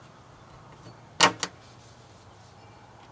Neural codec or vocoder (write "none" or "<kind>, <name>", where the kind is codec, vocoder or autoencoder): none